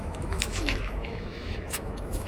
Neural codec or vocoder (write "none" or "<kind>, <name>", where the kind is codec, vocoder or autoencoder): autoencoder, DAC-VAE